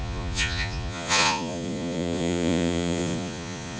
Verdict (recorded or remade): remade